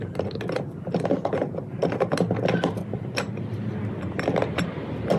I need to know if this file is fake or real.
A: real